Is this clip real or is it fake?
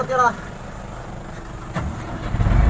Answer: real